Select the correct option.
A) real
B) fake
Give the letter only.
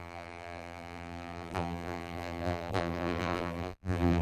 B